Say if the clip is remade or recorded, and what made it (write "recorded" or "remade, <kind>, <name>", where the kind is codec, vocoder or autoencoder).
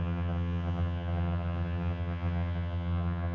remade, vocoder, HiFi-GAN